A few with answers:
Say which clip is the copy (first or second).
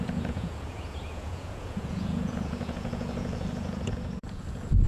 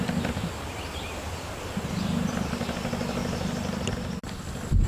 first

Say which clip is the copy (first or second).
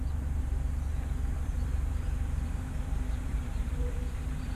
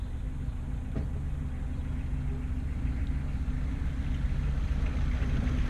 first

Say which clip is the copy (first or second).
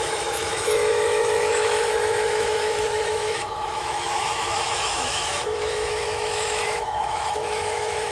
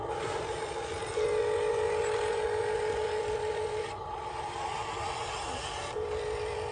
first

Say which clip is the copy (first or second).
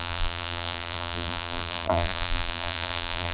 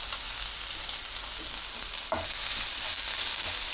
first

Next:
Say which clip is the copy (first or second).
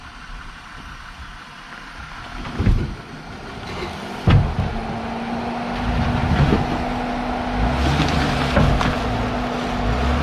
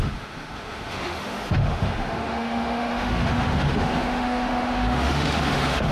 second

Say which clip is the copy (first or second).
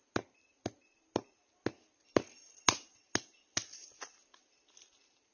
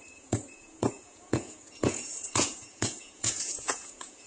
second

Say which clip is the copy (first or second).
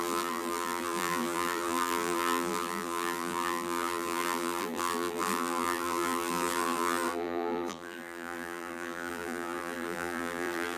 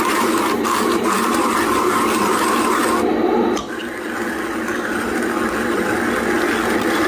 first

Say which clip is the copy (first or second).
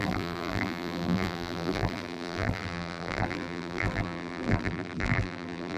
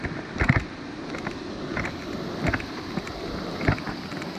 first